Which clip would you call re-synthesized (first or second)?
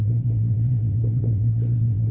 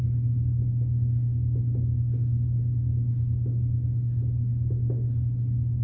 first